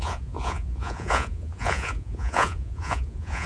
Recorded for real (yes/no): no